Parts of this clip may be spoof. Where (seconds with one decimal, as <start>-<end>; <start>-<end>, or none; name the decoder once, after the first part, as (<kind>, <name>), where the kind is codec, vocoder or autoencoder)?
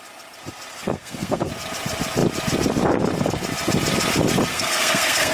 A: 0.7-1.5 (codec, SNAC); 4.5-5.3